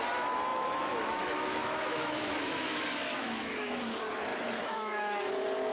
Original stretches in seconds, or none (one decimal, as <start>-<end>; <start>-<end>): 0.0-0.5; 3.8-4.3; 5.3-5.7